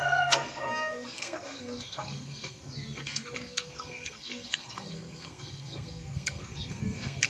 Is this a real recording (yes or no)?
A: no